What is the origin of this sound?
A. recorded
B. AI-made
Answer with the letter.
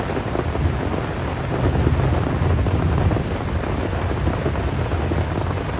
A